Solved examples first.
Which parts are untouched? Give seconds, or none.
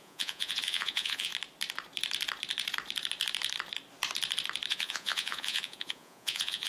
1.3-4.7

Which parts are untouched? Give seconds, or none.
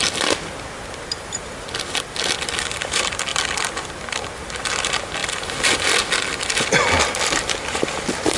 0.0-8.4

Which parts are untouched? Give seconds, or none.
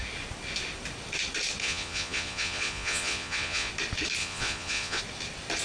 0.0-1.6; 3.7-4.2; 5.0-5.6